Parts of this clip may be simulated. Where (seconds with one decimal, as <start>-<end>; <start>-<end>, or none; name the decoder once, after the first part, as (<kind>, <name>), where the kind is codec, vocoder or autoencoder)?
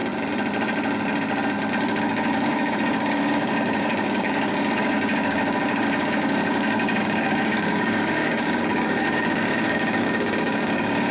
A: 2.0-11.1 (codec, DAC)